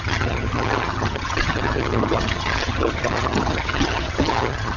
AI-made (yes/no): yes